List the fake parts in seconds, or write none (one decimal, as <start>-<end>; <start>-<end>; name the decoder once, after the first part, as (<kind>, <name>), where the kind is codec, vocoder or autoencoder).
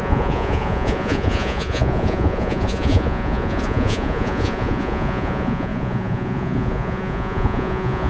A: 0.0-8.1 (vocoder, Vocos)